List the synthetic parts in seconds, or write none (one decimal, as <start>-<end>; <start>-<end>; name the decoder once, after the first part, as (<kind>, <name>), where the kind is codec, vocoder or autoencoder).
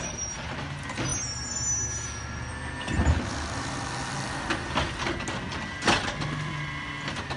none